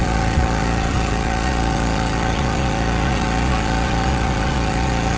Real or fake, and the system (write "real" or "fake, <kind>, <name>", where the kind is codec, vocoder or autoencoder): fake, vocoder, Vocos